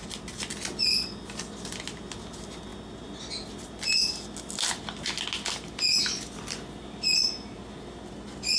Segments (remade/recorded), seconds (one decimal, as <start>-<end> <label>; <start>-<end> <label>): 0.0-8.6 recorded